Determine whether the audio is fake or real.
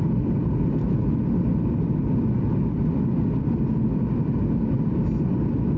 fake